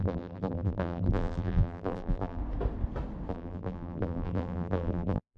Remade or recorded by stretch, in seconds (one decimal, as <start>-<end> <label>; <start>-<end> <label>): 0.0-2.4 remade; 2.4-3.3 recorded; 3.3-5.4 remade